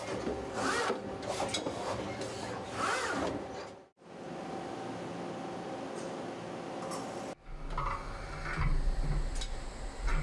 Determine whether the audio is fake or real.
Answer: real